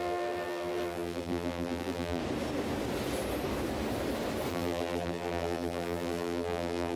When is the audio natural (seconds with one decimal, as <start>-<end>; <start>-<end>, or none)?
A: 2.2-4.5